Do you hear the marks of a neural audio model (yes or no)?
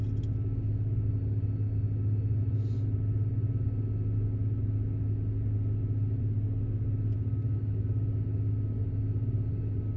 no